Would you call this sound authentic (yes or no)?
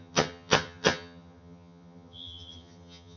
no